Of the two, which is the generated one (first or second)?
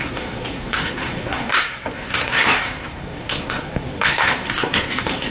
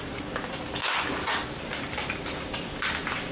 first